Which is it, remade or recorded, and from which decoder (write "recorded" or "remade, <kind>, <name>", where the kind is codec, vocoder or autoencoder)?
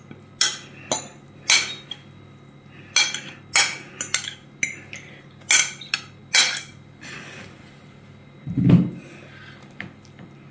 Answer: recorded